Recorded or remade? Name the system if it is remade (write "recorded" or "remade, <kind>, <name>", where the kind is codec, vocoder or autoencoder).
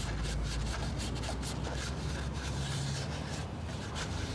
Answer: recorded